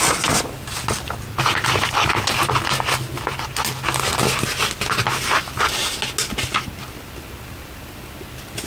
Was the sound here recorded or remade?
recorded